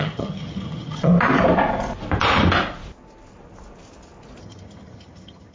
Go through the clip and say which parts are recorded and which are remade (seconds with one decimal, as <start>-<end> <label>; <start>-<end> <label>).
0.0-1.1 remade; 1.1-4.4 recorded; 4.4-5.5 remade